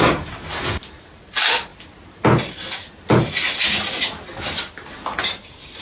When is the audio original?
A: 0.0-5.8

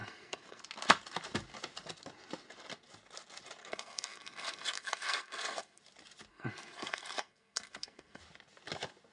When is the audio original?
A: 0.6-3.6; 5.8-6.3; 8.2-9.1

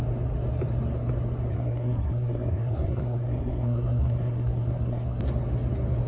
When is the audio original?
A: 0.0-1.5; 5.2-6.1

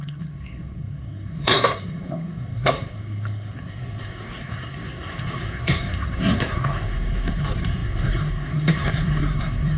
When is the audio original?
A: none